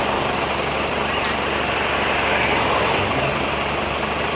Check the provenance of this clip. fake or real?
real